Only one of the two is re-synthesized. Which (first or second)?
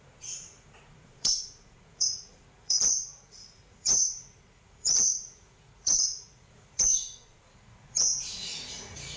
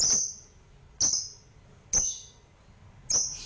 first